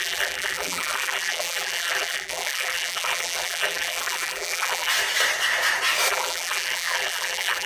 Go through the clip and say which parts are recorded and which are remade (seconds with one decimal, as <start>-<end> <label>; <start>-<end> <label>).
0.0-4.9 remade; 4.9-6.1 recorded; 6.1-7.7 remade